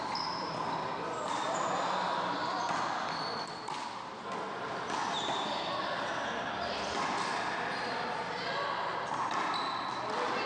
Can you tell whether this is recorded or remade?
recorded